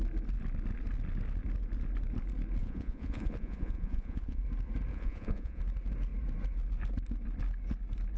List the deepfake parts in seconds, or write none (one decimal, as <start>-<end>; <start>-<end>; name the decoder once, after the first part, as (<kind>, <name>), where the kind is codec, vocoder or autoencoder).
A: 2.6-4.4 (vocoder, Vocos); 4.9-5.6